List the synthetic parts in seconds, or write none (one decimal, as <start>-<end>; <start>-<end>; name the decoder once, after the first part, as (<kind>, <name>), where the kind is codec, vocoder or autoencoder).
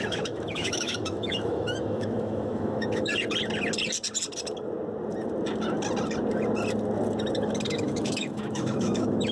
0.0-3.1 (autoencoder, DAC-VAE); 7.7-9.3